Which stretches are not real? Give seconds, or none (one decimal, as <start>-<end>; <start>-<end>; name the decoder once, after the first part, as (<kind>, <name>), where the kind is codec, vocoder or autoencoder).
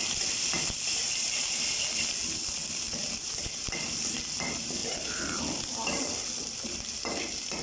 4.8-5.4 (vocoder, BigVGAN v2)